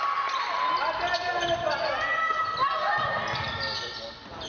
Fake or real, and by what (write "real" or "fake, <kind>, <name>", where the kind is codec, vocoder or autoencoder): real